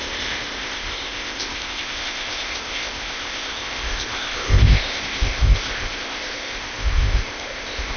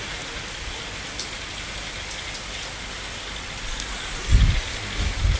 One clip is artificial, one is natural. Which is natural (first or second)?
second